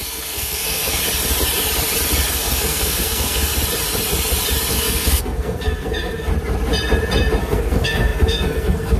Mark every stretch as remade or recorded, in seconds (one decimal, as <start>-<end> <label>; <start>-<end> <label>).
0.0-1.0 remade; 1.0-2.3 recorded; 2.3-3.5 remade; 3.5-4.7 recorded; 4.7-6.3 remade; 6.3-7.4 recorded; 7.4-9.0 remade